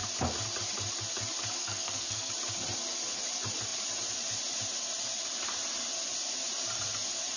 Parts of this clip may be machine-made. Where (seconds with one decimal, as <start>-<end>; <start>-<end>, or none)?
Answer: 1.6-2.3